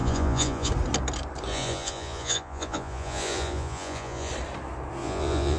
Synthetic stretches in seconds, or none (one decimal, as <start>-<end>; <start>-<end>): 0.0-0.7; 1.5-4.3; 5.0-5.6